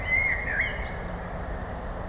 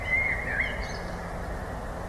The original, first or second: first